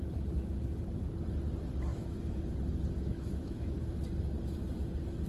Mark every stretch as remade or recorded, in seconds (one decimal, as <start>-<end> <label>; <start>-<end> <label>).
0.0-1.9 recorded; 1.9-2.4 remade; 2.4-3.1 recorded; 3.1-3.8 remade; 3.8-5.3 recorded